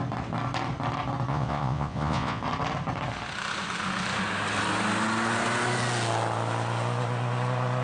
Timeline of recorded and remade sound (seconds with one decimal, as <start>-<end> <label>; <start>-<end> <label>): 0.0-1.3 recorded; 1.3-2.4 remade; 2.4-7.8 recorded